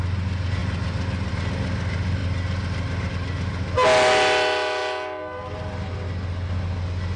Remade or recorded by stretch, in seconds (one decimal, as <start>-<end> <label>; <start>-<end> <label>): 0.0-7.2 recorded